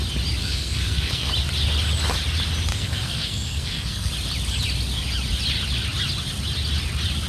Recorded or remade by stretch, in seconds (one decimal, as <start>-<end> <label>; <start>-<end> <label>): 0.0-0.4 recorded; 0.4-1.3 remade; 1.3-2.7 recorded; 2.7-4.1 remade; 4.1-7.3 recorded

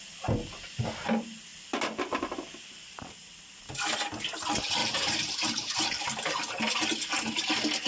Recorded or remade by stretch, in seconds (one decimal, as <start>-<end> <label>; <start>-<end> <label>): 0.0-4.8 recorded; 4.8-6.4 remade; 6.4-7.9 recorded